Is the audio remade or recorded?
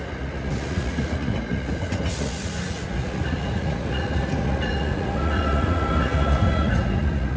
remade